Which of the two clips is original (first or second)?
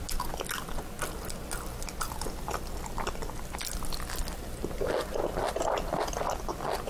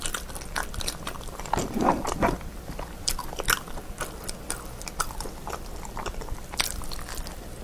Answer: first